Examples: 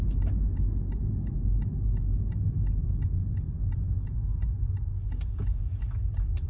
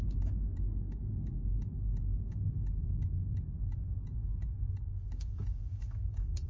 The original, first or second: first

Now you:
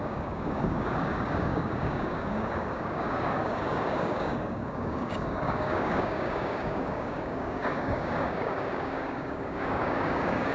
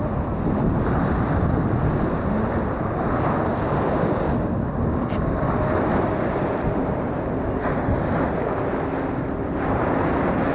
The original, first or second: second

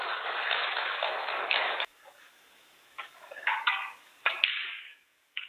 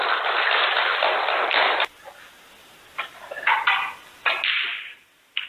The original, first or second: second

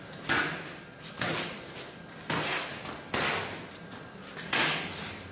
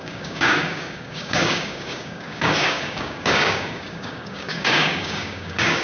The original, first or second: first